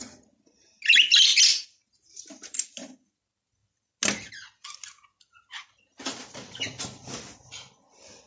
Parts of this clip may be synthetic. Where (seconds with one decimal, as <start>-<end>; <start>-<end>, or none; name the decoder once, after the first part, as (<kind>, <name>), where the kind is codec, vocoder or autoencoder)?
none